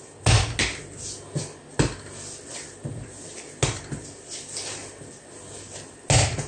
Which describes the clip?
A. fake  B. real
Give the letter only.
B